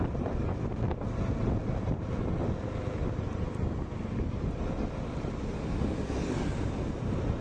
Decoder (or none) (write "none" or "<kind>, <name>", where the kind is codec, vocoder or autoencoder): none